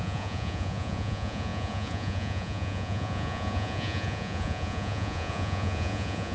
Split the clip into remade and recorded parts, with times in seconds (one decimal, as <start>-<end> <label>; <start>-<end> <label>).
0.0-6.3 remade

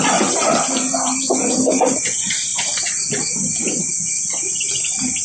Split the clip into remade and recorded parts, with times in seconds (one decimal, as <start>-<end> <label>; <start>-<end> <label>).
0.0-5.2 recorded

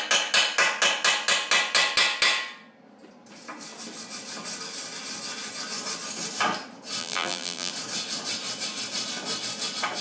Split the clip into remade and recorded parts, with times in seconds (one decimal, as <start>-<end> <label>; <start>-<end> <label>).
0.0-7.0 recorded; 7.0-7.7 remade; 7.7-10.0 recorded

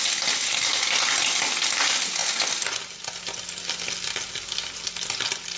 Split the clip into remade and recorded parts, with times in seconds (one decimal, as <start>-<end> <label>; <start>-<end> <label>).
0.0-5.6 recorded